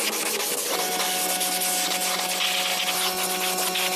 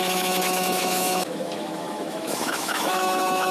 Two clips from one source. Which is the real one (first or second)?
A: first